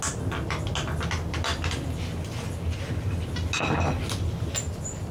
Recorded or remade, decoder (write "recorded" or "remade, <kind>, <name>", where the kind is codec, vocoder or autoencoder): recorded